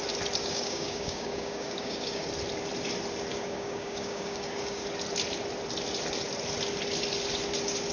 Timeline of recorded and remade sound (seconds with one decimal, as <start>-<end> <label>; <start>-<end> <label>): 0.0-0.4 recorded; 0.4-2.3 remade; 2.3-3.3 recorded; 3.3-4.8 remade; 4.8-7.9 recorded